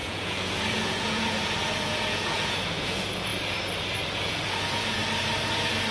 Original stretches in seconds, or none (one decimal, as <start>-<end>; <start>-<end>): 3.3-4.1; 5.0-5.9

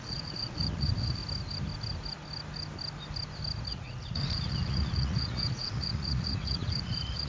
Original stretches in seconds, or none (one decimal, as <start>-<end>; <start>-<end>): 1.2-3.7